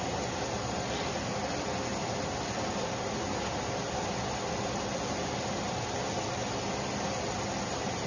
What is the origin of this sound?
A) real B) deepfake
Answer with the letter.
A